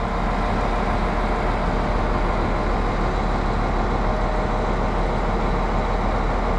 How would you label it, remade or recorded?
recorded